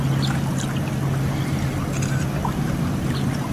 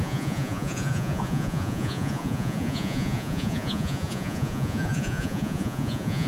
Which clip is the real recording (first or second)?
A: first